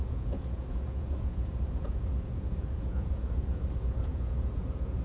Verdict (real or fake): fake